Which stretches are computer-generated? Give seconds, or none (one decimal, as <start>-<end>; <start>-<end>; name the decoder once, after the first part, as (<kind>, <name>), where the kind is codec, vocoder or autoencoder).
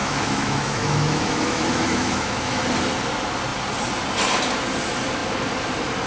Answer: 0.0-2.6 (autoencoder, DAC-VAE)